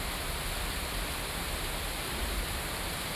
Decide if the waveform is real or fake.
real